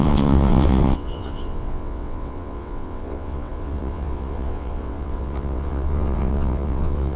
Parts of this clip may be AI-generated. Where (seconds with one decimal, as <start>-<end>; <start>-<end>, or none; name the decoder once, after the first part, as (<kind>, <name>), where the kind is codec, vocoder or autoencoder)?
0.0-7.2 (vocoder, WaveNeXt)